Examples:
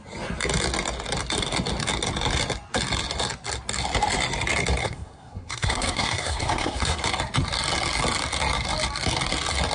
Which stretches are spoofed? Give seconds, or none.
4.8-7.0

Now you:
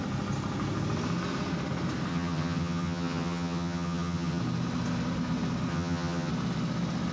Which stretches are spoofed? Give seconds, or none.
2.1-4.4; 5.7-6.3

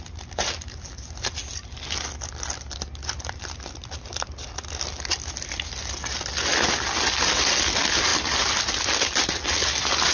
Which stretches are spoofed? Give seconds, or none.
none

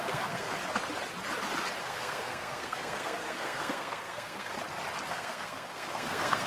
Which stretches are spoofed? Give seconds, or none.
0.0-0.6; 1.8-4.5; 5.1-6.5

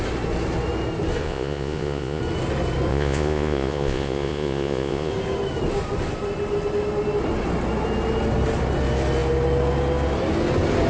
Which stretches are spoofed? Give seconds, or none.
1.2-2.2; 2.9-5.1

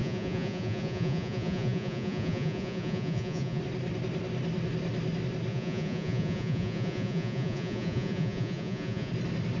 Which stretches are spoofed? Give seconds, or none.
0.0-3.6; 5.5-9.1

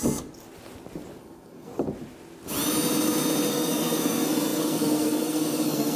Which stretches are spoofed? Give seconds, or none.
1.2-1.7; 3.5-6.0

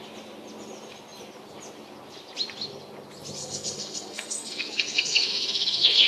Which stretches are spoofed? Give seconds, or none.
3.4-6.1